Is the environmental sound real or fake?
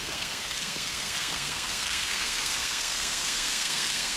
fake